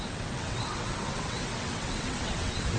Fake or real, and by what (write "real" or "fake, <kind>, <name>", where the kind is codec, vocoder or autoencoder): fake, vocoder, WaveNeXt